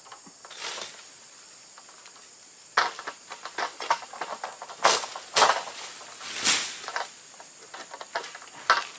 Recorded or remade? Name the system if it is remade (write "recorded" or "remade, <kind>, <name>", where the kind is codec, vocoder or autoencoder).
recorded